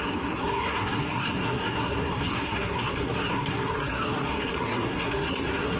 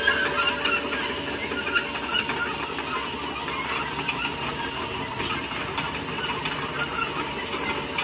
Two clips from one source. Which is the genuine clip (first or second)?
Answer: second